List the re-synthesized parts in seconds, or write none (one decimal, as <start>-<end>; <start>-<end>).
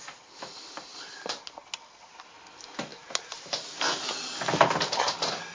none